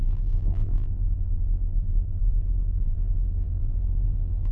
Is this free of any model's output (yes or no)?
no